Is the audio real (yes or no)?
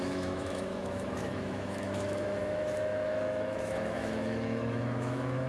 no